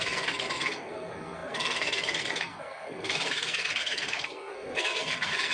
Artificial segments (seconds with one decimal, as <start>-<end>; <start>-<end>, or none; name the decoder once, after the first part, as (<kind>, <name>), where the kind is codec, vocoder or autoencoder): 0.0-5.5 (codec, SNAC)